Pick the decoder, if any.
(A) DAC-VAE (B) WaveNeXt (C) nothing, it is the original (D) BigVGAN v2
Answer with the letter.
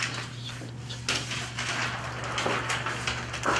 C